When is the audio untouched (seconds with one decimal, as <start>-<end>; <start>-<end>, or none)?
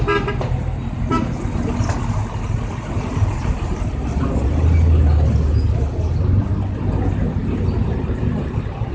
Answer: 0.0-8.9